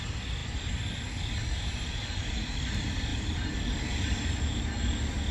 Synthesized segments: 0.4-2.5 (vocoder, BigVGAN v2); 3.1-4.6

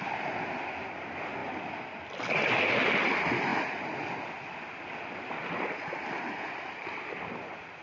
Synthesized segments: none

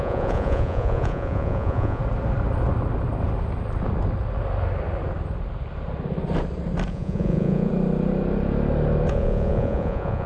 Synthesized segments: 0.0-2.0 (vocoder, Vocos); 6.9-7.7; 9.1-10.3

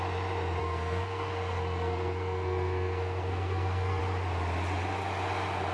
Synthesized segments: 0.6-4.0 (codec, SNAC)

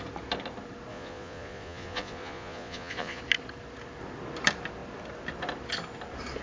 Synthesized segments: 0.9-3.2 (vocoder, Vocos)

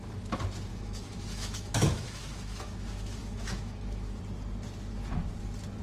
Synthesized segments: 0.7-4.2 (autoencoder, DAC-VAE)